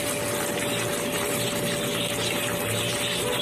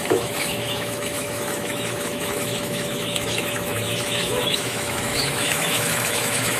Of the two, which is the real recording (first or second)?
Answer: first